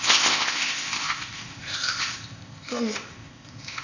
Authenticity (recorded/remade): remade